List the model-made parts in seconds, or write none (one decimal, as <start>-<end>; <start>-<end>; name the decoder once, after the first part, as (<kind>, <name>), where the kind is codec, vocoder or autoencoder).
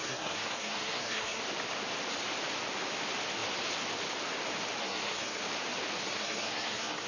0.0-1.4 (codec, SNAC); 4.8-5.4; 6.0-7.1